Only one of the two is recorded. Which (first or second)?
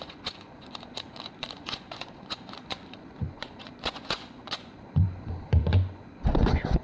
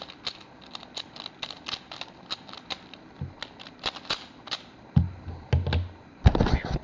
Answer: second